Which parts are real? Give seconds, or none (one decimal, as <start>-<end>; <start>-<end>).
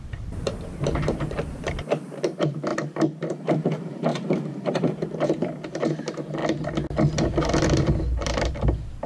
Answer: 2.7-3.3; 6.4-8.1